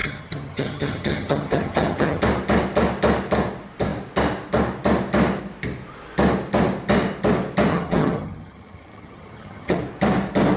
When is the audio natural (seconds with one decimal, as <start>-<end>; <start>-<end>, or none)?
2.2-7.7; 9.8-10.6